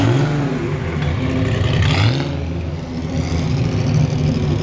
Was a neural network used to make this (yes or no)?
no